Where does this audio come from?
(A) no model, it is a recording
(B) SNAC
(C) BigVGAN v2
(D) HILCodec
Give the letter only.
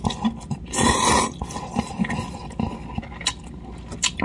A